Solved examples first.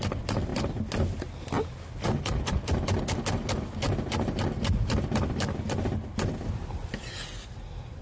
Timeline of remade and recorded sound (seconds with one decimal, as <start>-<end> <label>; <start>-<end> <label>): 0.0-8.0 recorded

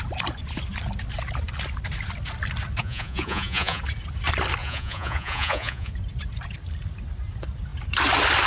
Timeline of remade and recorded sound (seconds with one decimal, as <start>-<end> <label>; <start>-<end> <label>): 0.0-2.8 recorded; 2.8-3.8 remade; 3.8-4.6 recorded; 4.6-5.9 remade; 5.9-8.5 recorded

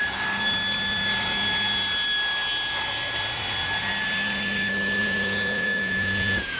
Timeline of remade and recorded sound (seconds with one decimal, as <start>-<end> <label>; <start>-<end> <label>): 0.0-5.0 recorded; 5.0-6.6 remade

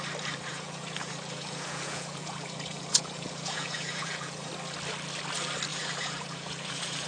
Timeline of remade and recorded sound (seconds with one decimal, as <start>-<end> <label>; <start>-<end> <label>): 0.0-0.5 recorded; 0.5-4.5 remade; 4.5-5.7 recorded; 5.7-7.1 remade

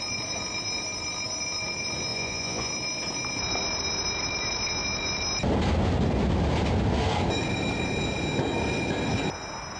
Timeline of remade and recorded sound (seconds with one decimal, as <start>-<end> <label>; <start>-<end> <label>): 0.0-2.1 recorded; 2.1-2.7 remade; 2.7-9.8 recorded

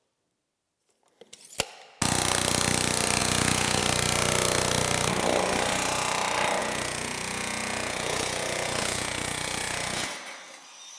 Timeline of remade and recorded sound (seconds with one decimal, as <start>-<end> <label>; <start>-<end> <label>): 0.0-3.2 recorded; 3.2-3.8 remade; 3.8-6.6 recorded; 6.6-10.1 remade; 10.1-11.0 recorded